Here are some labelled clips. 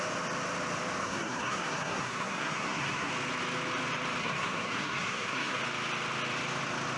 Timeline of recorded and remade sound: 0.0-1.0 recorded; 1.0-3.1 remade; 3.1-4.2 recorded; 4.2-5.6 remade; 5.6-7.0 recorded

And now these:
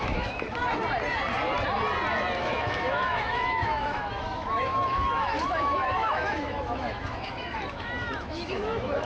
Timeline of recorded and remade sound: 0.0-0.6 remade; 0.6-2.4 recorded; 2.4-9.1 remade

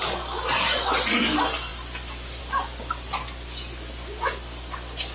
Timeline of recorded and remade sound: 0.0-5.1 recorded

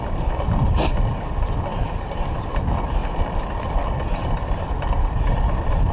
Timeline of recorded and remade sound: 0.0-1.7 recorded; 1.7-2.5 remade; 2.5-5.9 recorded